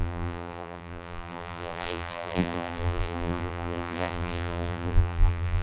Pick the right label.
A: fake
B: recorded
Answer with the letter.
A